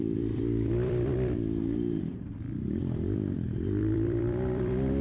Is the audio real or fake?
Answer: fake